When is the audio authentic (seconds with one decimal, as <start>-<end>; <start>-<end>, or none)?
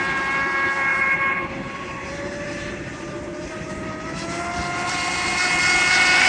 0.0-0.9; 3.7-6.3